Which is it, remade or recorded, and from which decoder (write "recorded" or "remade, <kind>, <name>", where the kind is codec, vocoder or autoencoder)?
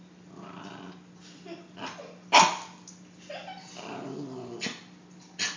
recorded